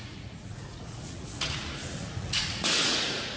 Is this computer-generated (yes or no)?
yes